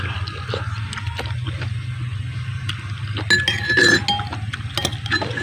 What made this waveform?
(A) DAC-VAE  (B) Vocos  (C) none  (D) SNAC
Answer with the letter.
C